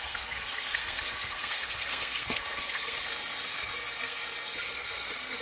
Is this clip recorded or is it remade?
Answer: remade